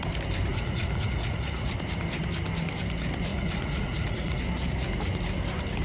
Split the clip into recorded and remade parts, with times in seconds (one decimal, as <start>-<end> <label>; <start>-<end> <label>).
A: 0.0-0.5 recorded; 0.5-1.6 remade; 1.6-3.3 recorded; 3.3-4.4 remade; 4.4-5.8 recorded